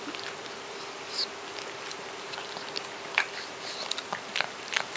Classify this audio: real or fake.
real